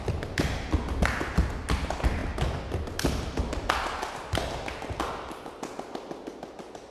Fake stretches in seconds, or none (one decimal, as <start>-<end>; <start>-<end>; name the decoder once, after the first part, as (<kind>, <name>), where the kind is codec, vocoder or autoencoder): none